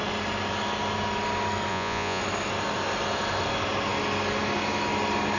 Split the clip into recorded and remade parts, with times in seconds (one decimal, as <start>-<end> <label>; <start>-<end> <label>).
0.0-1.7 recorded; 1.7-2.2 remade; 2.2-5.4 recorded